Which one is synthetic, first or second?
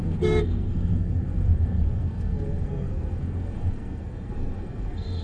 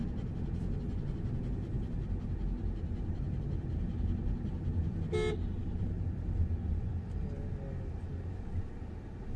first